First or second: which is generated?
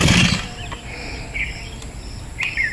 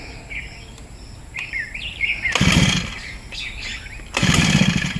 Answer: first